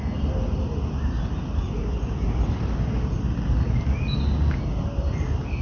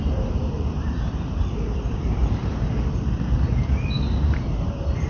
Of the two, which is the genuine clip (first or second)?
first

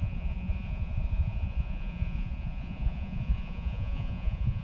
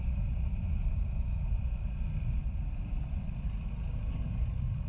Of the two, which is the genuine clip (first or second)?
second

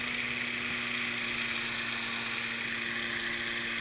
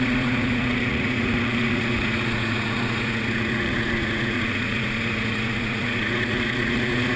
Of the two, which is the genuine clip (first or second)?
first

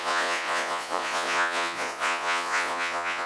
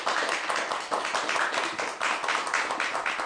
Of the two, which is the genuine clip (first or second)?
second